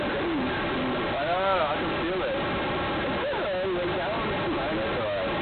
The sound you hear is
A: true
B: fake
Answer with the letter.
A